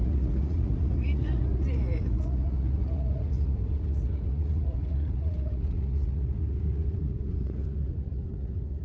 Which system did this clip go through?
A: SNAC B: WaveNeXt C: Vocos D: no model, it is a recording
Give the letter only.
C